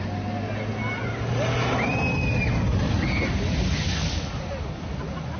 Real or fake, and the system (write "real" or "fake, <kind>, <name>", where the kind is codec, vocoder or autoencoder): real